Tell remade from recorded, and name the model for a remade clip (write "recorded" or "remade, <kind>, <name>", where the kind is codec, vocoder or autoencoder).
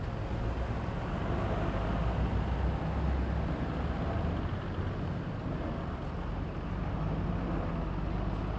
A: recorded